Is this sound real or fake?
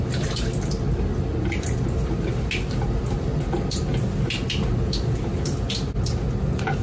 real